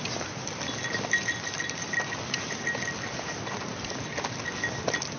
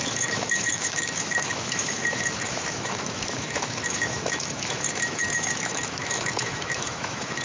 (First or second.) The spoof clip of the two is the second